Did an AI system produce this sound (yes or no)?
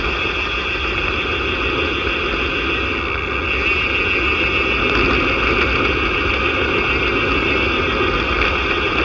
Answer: no